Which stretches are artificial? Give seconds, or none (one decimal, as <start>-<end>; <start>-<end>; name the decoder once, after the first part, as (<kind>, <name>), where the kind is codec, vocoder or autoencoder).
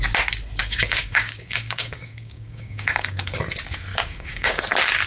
0.6-3.4 (codec, DAC); 3.9-4.6